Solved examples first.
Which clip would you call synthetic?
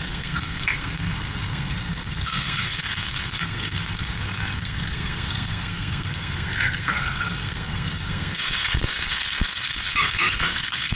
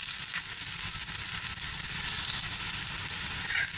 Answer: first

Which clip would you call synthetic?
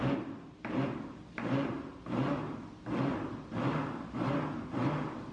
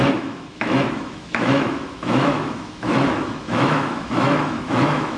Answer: second